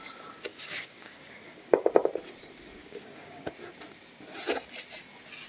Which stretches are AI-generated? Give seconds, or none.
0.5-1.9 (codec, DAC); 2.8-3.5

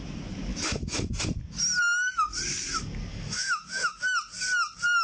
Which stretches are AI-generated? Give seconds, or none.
0.5-1.2 (autoencoder, DAC-VAE); 3.1-4.0

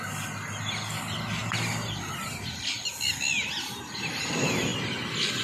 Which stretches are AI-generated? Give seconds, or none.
3.8-4.3 (vocoder, BigVGAN v2)

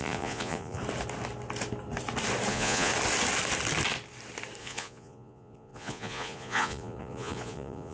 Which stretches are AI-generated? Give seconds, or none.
0.0-0.8 (vocoder, Vocos); 2.5-2.9; 4.6-7.9